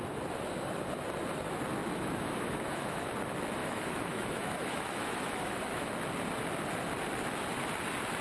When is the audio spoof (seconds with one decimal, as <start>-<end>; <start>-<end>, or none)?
1.8-3.1; 3.6-5.9